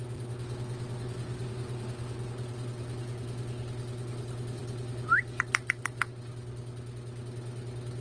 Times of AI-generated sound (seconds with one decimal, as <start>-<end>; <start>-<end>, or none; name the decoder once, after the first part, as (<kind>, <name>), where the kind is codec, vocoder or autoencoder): none